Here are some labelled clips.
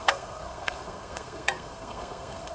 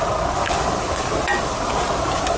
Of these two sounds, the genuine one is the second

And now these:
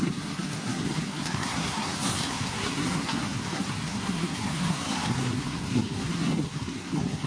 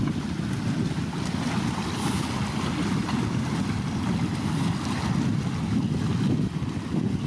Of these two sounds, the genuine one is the second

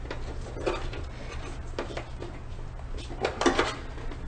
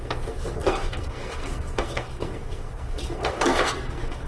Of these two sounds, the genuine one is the first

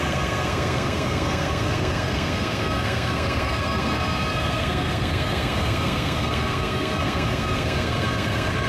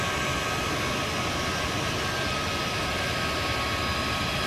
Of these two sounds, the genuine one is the second